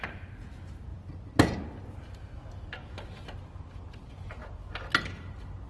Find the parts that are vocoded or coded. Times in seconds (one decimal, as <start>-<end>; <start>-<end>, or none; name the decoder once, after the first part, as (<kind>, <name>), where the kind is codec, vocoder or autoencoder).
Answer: none